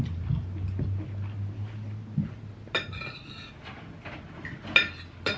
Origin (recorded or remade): recorded